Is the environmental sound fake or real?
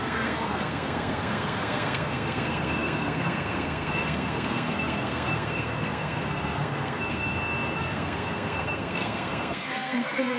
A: fake